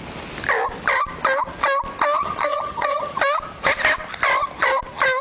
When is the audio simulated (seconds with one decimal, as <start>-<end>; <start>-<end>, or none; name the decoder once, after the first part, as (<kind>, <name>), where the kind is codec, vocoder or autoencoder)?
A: 2.2-3.2 (vocoder, HiFi-GAN)